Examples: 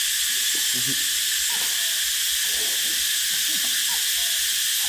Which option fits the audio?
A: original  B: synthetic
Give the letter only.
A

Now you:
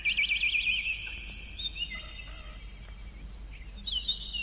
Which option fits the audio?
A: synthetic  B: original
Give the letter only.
B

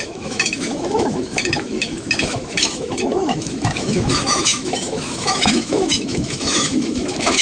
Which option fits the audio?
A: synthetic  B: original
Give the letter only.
A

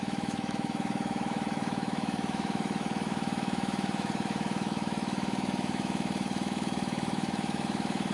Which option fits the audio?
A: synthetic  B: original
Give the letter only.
A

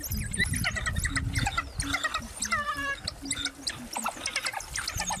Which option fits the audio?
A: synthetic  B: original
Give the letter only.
B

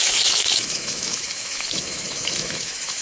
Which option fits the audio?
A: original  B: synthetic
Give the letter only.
B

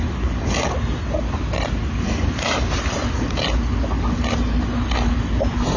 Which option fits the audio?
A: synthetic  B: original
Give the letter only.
B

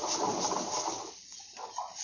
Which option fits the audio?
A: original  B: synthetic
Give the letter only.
A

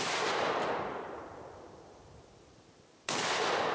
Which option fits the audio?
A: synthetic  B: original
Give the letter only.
B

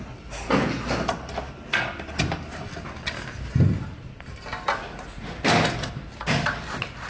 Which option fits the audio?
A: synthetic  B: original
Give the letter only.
B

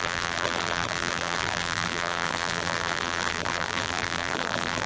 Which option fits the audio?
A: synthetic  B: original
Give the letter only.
A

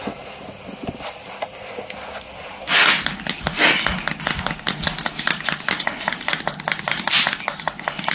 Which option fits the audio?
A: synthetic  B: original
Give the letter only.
B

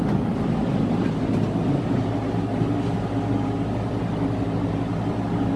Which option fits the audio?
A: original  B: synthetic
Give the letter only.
A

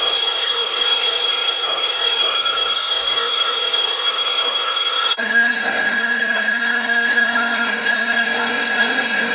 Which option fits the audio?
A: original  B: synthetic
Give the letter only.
B